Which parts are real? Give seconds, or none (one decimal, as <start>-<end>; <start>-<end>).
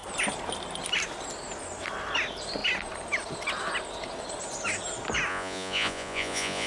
0.0-5.3